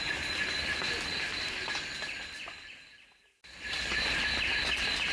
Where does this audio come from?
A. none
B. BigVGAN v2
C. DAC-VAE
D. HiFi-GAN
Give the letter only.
A